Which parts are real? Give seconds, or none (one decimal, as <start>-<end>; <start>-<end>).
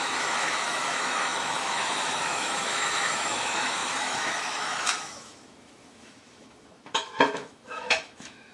none